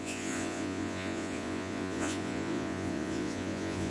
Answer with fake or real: fake